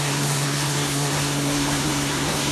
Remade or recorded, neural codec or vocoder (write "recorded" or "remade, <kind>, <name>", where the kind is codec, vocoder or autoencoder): remade, codec, SNAC